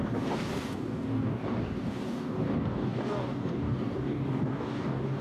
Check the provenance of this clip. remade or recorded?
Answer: remade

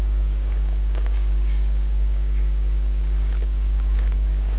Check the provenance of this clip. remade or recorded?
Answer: remade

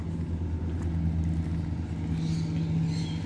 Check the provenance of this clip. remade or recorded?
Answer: recorded